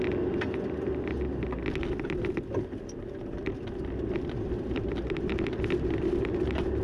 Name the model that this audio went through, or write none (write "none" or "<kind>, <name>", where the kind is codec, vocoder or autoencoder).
none